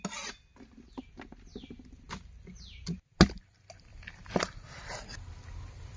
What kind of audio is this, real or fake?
real